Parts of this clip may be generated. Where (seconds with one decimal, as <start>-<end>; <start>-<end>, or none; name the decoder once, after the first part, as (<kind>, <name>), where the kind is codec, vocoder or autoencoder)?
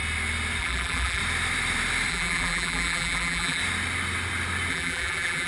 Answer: 0.6-1.2 (vocoder, BigVGAN v2); 2.1-3.6; 4.7-5.5